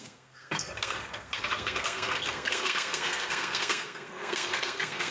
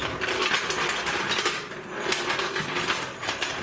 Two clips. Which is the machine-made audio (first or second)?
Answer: first